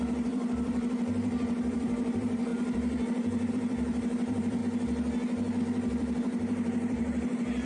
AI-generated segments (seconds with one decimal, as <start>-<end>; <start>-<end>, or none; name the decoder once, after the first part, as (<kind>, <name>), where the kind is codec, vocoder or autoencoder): 0.0-4.6 (vocoder, BigVGAN v2); 5.6-7.7